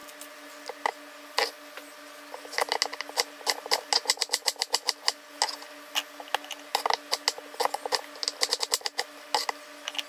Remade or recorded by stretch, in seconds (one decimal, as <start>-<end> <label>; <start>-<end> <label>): 0.0-10.1 recorded